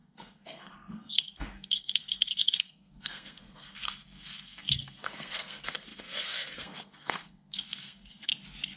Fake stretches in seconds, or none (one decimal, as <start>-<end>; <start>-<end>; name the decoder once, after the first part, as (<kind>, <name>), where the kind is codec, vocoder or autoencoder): 0.0-8.3 (codec, SNAC)